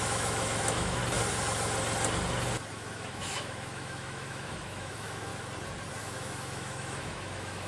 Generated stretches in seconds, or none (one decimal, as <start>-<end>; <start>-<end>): 0.0-1.0; 2.7-5.3; 6.0-7.7